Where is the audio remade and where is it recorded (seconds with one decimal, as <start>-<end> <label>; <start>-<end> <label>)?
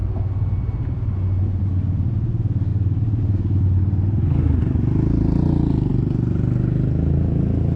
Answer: 0.0-7.8 recorded